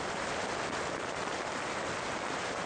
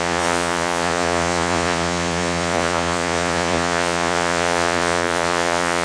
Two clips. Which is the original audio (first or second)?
first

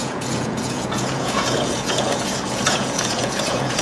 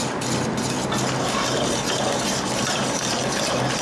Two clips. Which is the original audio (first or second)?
second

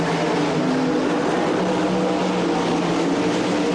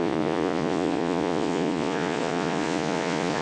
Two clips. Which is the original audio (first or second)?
first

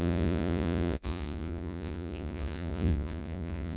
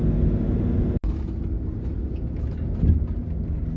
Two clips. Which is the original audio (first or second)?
second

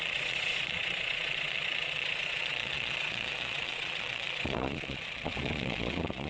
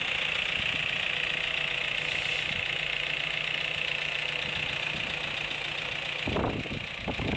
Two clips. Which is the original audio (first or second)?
second